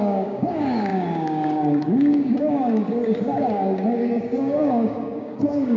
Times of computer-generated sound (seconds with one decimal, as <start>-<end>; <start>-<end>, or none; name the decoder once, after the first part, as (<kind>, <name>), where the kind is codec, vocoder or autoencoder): 0.0-5.8 (codec, DAC)